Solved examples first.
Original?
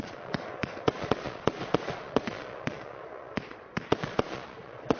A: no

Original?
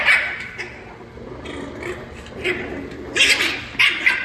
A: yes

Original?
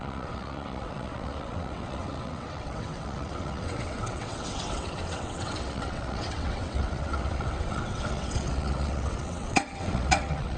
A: no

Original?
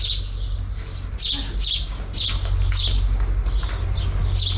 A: yes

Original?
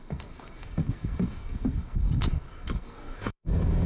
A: no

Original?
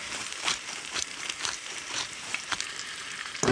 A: no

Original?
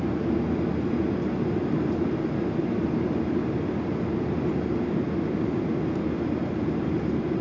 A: yes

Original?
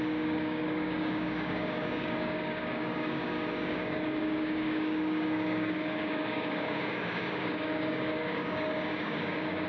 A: no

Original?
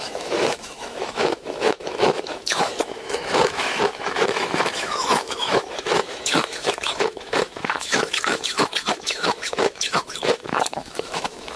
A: no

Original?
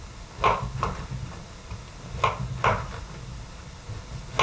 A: yes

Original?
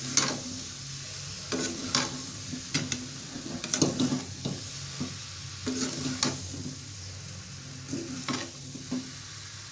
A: yes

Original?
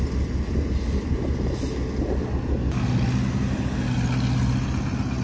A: yes